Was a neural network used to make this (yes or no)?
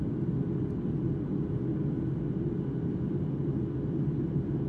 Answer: no